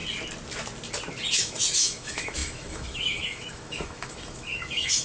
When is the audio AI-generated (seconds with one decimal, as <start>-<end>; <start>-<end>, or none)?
1.4-5.0